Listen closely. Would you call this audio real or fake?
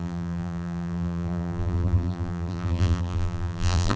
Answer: fake